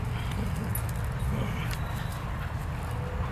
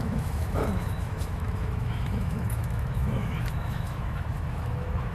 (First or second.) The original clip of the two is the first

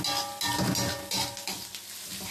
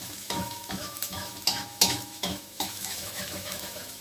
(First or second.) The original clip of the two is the first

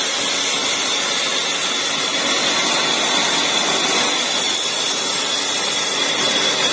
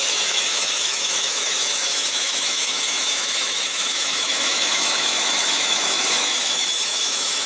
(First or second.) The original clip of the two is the first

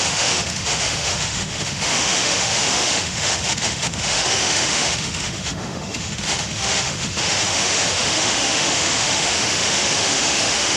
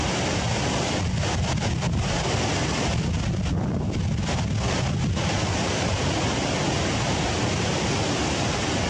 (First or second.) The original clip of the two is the second